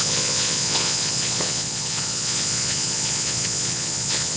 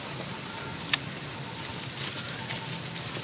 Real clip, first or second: second